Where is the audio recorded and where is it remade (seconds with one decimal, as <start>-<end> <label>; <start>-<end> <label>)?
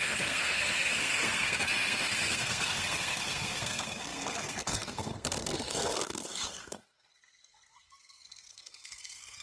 0.0-9.4 remade